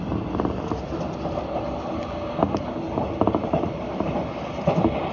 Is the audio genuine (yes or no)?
yes